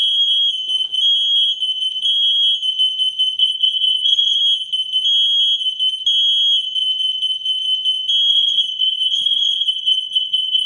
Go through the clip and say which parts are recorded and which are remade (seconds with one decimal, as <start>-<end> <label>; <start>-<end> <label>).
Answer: 0.0-3.4 recorded; 3.4-4.4 remade; 4.4-8.3 recorded; 8.3-10.7 remade

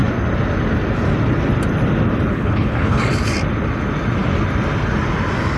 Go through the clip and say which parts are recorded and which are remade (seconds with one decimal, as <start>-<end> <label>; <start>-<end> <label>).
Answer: 0.0-2.3 recorded; 2.3-3.0 remade; 3.0-5.6 recorded

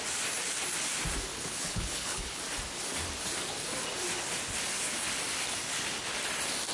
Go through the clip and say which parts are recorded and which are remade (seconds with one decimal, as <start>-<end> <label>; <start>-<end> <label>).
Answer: 0.0-1.3 recorded; 1.3-2.4 remade; 2.4-6.7 recorded

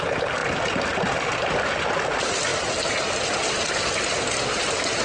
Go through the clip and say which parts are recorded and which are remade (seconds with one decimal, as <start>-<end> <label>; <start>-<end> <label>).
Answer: 0.0-5.0 recorded

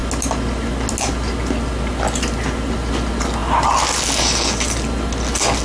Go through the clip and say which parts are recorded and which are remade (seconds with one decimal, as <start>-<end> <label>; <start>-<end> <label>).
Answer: 0.0-5.6 recorded

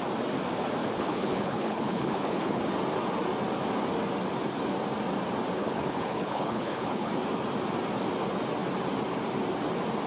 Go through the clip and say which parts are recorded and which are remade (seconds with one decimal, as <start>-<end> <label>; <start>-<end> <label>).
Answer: 0.0-0.8 recorded; 0.8-2.6 remade; 2.6-5.6 recorded; 5.6-7.1 remade; 7.1-10.1 recorded